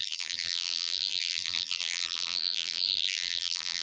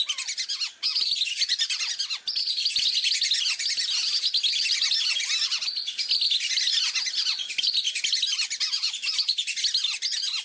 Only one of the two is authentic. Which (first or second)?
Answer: second